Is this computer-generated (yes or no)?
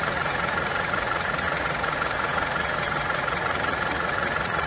yes